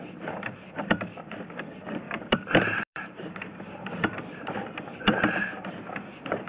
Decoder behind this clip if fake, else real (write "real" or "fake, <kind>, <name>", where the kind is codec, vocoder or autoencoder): fake, vocoder, BigVGAN v2